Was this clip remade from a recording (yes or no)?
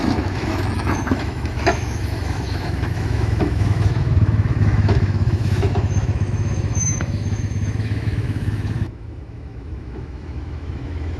yes